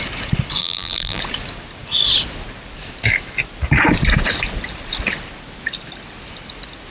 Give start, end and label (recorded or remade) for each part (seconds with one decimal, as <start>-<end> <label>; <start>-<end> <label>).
0.0-0.6 recorded; 0.6-1.2 remade; 1.2-6.9 recorded